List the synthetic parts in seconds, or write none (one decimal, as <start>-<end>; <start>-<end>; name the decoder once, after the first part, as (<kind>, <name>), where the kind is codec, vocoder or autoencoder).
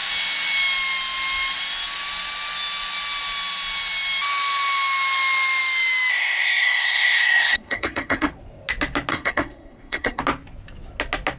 6.1-8.3 (codec, SNAC); 9.1-10.2